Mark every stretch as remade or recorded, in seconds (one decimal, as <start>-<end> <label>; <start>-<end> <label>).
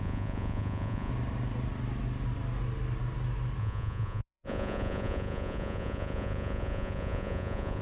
0.0-1.1 remade; 1.1-3.6 recorded; 3.6-7.8 remade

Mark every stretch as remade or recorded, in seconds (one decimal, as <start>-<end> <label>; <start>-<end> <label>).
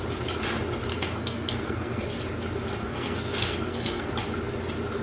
0.0-0.9 recorded; 0.9-2.0 remade; 2.0-2.8 recorded; 2.8-4.1 remade; 4.1-5.0 recorded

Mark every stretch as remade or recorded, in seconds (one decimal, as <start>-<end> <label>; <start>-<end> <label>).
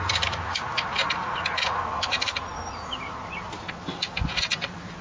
0.0-5.0 remade